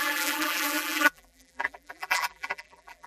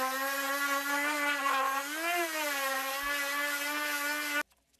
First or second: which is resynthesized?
first